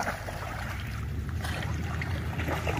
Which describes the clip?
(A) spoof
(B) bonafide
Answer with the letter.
A